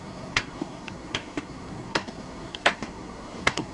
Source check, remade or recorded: remade